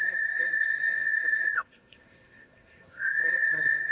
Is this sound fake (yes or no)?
yes